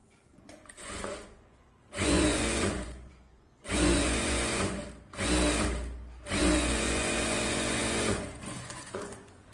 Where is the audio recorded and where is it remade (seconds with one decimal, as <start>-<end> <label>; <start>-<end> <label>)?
0.0-4.8 remade; 4.8-6.4 recorded; 6.4-9.5 remade